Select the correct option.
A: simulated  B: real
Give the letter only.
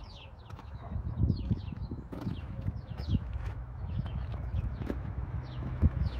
A